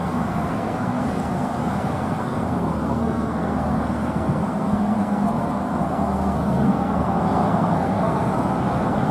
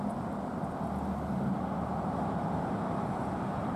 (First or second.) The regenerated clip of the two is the first